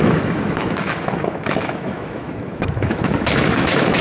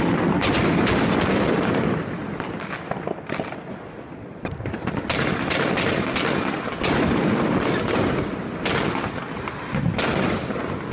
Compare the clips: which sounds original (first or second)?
second